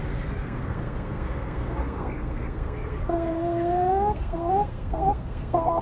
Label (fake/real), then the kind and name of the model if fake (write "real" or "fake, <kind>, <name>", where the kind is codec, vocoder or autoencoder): fake, codec, SNAC